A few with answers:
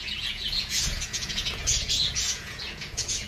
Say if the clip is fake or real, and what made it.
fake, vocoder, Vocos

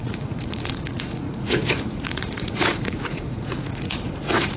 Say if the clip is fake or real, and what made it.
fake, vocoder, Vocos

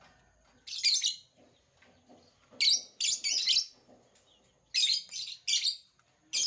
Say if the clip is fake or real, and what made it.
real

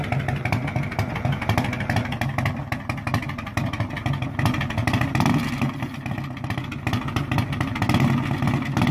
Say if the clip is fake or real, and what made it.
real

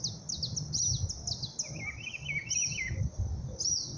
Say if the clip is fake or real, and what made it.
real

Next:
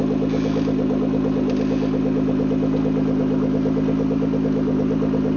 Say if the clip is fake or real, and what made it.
real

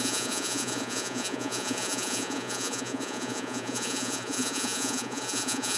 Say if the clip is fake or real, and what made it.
fake, vocoder, Vocos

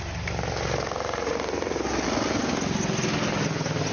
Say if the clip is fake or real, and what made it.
real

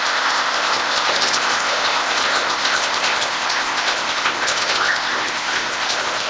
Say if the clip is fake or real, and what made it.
fake, codec, ZipCodec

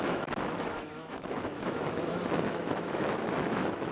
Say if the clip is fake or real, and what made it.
fake, autoencoder, DAC-VAE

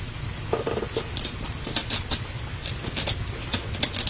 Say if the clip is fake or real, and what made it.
real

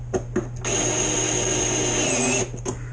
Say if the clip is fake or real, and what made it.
real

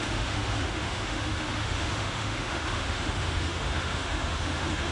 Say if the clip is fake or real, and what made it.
fake, autoencoder, DAC-VAE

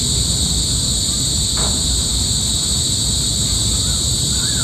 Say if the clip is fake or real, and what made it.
real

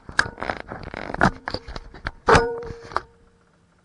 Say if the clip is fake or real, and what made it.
fake, vocoder, BigVGAN v2